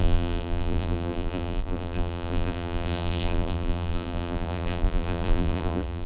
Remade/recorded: remade